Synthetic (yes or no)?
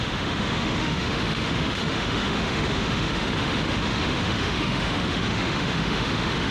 yes